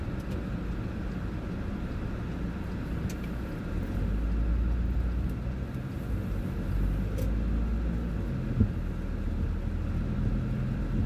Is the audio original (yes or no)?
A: yes